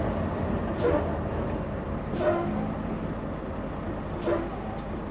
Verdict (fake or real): real